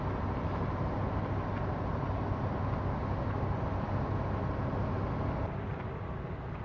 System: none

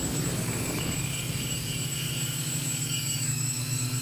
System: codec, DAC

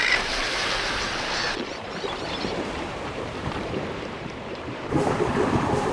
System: vocoder, BigVGAN v2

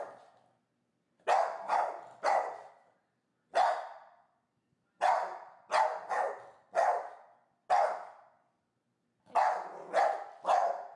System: none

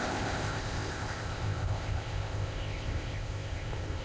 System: codec, ZipCodec